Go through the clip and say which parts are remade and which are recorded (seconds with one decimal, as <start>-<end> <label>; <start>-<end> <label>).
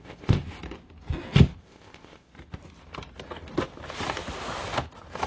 0.0-0.4 remade; 0.4-1.6 recorded; 1.6-2.3 remade; 2.3-5.3 recorded